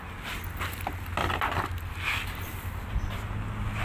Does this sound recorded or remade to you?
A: recorded